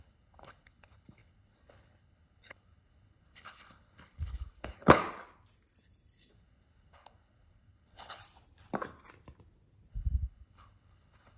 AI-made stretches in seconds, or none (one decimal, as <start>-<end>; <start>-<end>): 0.0-5.0; 6.3-8.2; 9.9-11.4